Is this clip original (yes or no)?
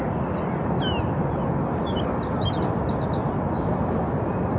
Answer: yes